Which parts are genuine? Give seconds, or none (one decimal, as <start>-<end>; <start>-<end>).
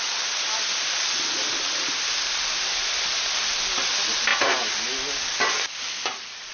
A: 0.0-6.5